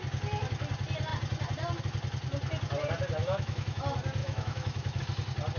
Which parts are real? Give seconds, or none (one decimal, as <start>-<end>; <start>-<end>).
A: 0.0-3.2; 3.8-4.2; 5.0-5.6